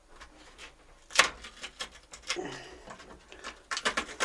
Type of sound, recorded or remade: recorded